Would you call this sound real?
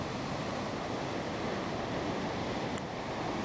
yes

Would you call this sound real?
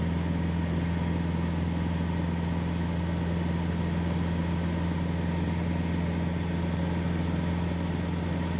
yes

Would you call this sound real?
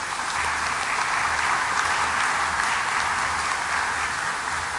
yes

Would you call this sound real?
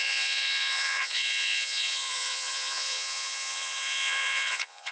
no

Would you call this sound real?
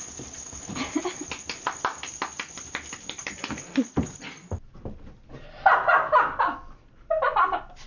yes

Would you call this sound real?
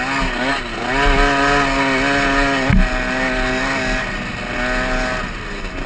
yes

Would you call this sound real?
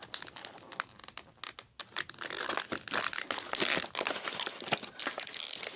yes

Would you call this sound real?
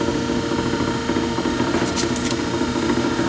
yes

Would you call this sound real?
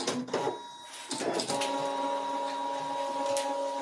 yes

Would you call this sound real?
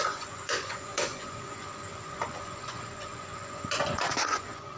no